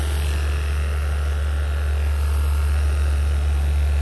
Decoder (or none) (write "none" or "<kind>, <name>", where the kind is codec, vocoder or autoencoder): none